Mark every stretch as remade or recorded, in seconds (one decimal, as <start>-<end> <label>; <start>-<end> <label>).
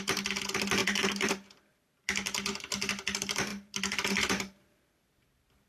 0.0-0.8 recorded; 0.8-2.6 remade; 2.6-3.5 recorded; 3.5-5.1 remade; 5.1-5.7 recorded